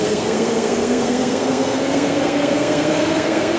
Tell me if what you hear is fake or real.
fake